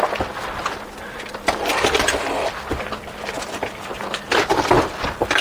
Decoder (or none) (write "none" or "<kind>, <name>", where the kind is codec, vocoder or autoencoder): none